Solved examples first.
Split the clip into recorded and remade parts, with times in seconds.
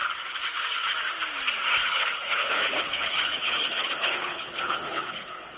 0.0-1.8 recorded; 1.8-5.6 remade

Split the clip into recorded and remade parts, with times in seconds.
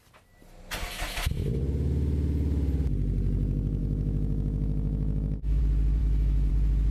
0.0-3.8 recorded; 3.8-5.6 remade; 5.6-6.0 recorded; 6.0-6.5 remade; 6.5-6.9 recorded